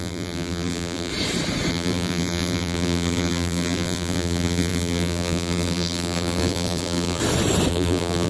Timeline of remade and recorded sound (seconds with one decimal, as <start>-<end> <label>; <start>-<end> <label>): 0.0-1.1 remade; 1.1-1.7 recorded; 1.7-7.2 remade; 7.2-7.7 recorded; 7.7-8.3 remade